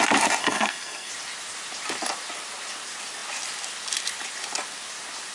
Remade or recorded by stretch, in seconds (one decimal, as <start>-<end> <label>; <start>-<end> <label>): 0.0-0.4 recorded; 0.4-1.1 remade; 1.1-5.3 recorded